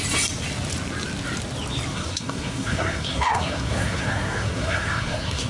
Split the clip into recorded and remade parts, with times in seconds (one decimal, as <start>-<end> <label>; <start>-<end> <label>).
0.0-1.9 recorded; 1.9-5.5 remade